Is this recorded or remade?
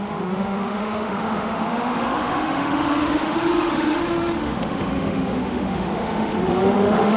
remade